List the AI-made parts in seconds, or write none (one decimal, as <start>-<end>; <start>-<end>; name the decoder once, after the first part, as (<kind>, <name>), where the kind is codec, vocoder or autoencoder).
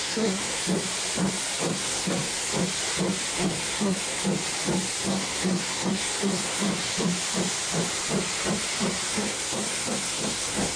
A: 0.0-0.6 (codec, SNAC); 1.6-2.5; 3.3-4.2; 5.0-6.7; 9.1-10.8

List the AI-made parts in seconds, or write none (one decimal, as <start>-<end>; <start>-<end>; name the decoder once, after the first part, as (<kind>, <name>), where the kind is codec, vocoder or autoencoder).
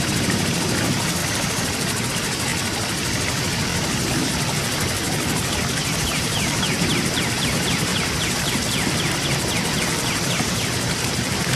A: 0.0-1.2 (vocoder, BigVGAN v2); 2.1-2.5; 6.0-7.9; 10.3-11.6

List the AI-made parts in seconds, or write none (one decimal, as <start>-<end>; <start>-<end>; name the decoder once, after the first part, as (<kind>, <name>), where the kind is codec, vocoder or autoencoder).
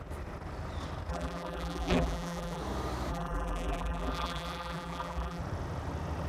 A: 1.1-2.6 (vocoder, BigVGAN v2); 3.1-5.4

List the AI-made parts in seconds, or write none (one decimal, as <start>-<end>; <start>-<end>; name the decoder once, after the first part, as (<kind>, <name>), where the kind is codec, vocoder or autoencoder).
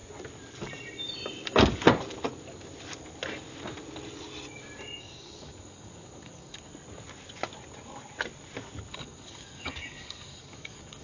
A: 5.0-6.7 (codec, DAC); 8.9-11.0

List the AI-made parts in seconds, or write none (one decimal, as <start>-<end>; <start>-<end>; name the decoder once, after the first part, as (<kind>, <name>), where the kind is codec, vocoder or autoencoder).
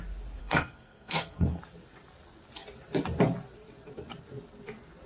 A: 0.4-1.6 (codec, SNAC)